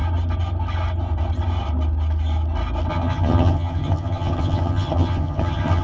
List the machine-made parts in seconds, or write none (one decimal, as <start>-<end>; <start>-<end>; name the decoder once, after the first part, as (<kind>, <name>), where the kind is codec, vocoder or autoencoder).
2.9-5.8 (vocoder, HiFi-GAN)